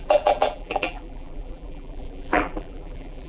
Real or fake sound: fake